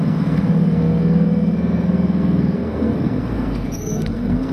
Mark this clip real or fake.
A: fake